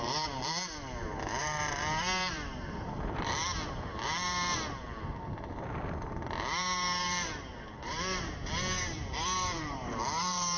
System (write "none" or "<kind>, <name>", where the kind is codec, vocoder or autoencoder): vocoder, BigVGAN v2